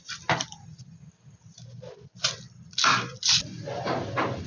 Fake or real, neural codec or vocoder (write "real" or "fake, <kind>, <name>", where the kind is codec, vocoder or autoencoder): real